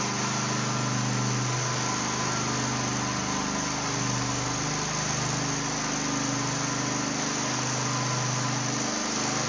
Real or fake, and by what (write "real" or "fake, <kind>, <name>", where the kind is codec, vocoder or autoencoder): real